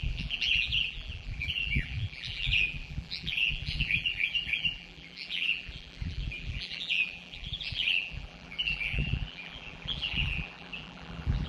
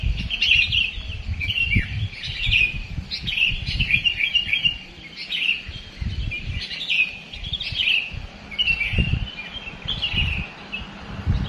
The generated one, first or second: first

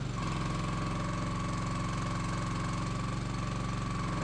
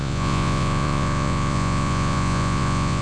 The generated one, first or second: second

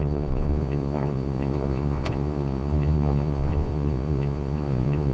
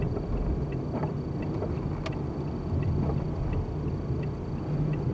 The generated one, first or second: first